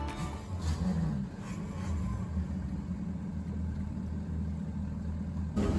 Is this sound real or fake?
real